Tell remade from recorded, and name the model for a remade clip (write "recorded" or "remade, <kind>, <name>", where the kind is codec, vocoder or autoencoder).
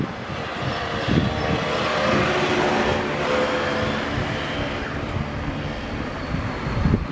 recorded